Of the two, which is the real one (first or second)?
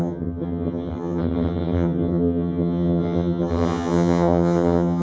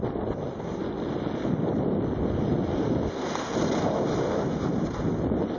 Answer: second